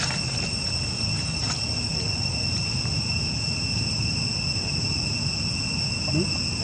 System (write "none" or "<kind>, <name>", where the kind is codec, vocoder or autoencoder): none